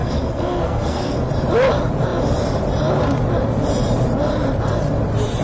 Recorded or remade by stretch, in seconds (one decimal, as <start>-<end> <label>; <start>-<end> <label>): 0.0-1.2 remade; 1.2-5.4 recorded